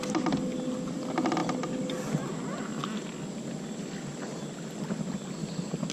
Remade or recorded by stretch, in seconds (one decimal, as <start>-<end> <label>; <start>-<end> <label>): 0.0-5.9 recorded